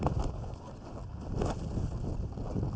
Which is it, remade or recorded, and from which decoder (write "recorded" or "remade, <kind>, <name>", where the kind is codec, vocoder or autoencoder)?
recorded